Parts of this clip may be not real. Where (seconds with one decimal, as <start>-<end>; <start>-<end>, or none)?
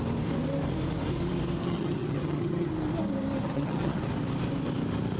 1.6-2.7; 3.4-4.0